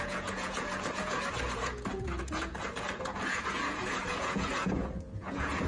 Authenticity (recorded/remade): remade